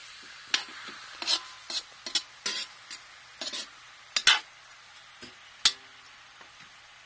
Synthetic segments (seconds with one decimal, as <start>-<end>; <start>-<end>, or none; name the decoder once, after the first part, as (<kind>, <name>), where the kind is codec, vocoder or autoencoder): none